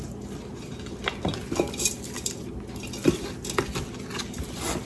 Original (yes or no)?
yes